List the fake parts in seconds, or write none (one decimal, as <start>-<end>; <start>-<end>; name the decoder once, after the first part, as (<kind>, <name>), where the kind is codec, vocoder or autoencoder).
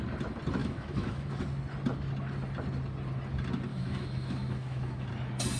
0.6-1.4 (autoencoder, DAC-VAE); 3.7-5.1